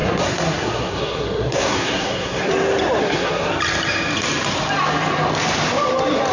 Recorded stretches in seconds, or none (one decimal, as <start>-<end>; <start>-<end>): 2.5-3.0; 3.5-6.3